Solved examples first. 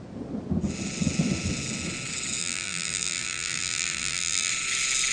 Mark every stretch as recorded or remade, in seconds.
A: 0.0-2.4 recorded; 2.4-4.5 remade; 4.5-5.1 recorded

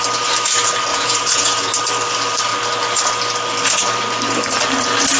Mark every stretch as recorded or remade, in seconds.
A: 0.0-0.9 recorded; 0.9-1.7 remade; 1.7-5.2 recorded

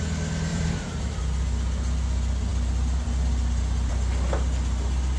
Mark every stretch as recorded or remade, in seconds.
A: 0.0-0.5 recorded; 0.5-1.2 remade; 1.2-5.2 recorded

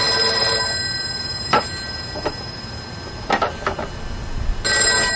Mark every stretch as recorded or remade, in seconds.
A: 0.0-5.2 recorded

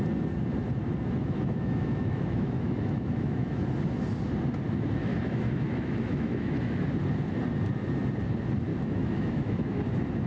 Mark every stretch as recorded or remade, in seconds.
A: 0.0-1.2 recorded; 1.2-3.6 remade; 3.6-5.1 recorded; 5.1-6.8 remade; 6.8-8.7 recorded; 8.7-9.8 remade; 9.8-10.3 recorded

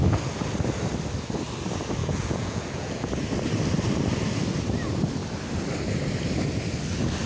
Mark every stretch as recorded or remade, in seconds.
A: 0.0-2.0 recorded; 2.0-3.1 remade; 3.1-7.3 recorded